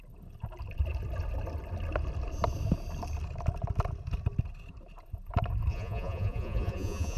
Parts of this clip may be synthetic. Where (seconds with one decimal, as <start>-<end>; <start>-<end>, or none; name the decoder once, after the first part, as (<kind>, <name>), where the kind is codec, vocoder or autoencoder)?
5.7-7.2 (vocoder, Vocos)